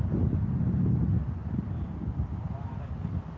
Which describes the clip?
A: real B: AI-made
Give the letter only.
A